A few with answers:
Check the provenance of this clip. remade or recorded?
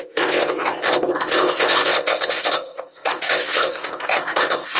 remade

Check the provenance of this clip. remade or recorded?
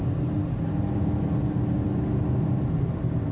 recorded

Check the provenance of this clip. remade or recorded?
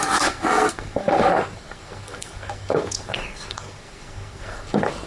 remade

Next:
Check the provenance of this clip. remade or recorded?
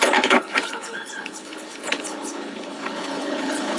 remade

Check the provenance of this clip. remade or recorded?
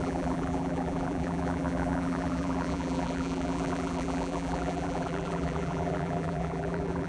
remade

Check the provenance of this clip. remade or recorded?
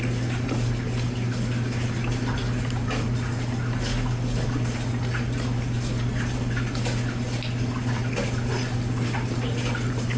recorded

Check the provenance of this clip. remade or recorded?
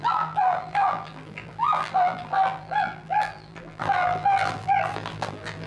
remade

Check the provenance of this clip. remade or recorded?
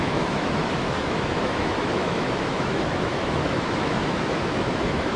remade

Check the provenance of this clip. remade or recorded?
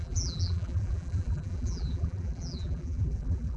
remade